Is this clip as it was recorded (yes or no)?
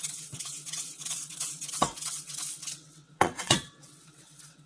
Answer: no